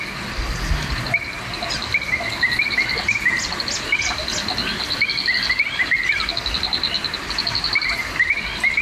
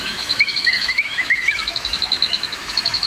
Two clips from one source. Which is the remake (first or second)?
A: second